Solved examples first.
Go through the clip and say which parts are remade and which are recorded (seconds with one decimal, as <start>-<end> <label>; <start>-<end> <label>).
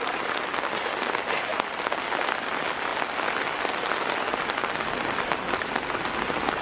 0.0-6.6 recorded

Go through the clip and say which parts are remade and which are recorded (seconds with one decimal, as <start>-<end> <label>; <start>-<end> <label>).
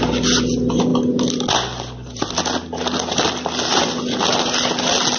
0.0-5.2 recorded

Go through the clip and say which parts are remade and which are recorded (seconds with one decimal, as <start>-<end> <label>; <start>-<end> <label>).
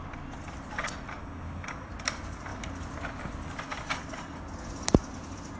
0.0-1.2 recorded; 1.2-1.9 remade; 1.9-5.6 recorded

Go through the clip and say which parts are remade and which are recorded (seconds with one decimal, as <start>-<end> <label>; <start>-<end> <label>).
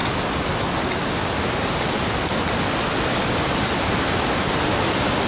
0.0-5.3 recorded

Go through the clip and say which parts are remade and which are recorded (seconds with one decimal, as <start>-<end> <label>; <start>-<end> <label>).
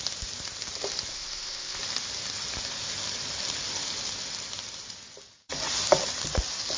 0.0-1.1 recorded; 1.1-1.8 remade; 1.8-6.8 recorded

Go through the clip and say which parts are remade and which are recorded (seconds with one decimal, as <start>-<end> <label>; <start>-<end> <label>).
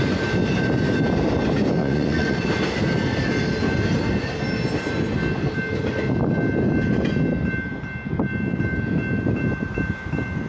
0.0-1.8 recorded; 1.8-2.4 remade; 2.4-10.5 recorded